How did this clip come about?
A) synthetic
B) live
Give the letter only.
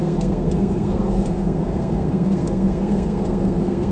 A